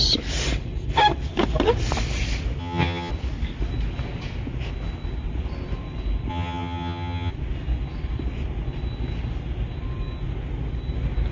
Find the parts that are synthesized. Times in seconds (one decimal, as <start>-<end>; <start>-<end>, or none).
2.6-3.1; 6.3-7.3